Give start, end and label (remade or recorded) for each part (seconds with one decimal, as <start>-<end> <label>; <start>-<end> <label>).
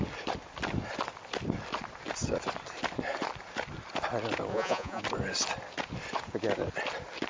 0.0-4.5 recorded; 4.5-5.0 remade; 5.0-7.3 recorded